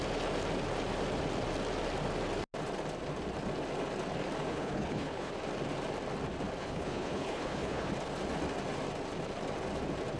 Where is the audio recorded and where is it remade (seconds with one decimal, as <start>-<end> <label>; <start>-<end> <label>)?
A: 0.0-4.5 recorded; 4.5-5.3 remade; 5.3-6.6 recorded; 6.6-7.9 remade; 7.9-10.2 recorded